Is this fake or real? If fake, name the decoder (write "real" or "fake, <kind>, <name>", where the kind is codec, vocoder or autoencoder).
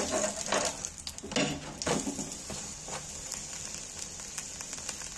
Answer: real